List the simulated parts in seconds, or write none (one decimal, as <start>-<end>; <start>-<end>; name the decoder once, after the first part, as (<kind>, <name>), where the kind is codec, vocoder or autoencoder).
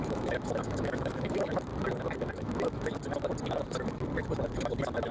0.0-1.7 (autoencoder, DAC-VAE); 2.3-3.0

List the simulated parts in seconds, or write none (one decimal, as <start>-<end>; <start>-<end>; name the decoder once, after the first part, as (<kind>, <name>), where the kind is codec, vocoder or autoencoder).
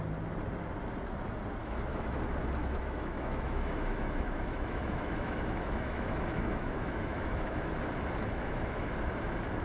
1.6-2.2 (autoencoder, DAC-VAE); 2.6-7.7; 8.3-9.2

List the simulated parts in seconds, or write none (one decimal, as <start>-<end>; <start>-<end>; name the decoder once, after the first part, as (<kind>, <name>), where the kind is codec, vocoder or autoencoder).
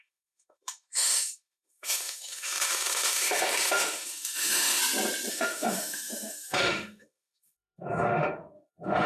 0.0-4.8 (autoencoder, DAC-VAE); 5.3-9.1